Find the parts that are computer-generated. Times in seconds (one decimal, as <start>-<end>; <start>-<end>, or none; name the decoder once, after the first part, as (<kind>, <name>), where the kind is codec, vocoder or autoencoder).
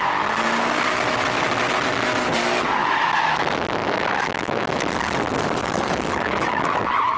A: 2.8-3.3 (autoencoder, DAC-VAE); 3.8-4.8; 5.6-7.2